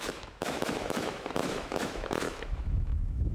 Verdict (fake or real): fake